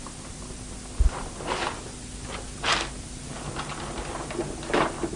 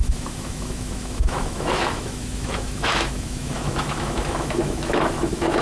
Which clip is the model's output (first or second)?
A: second